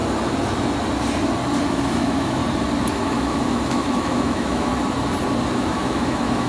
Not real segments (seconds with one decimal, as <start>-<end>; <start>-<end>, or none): 1.7-2.4; 2.9-4.7; 5.5-6.5